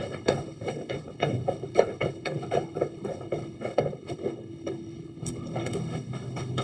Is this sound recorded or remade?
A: remade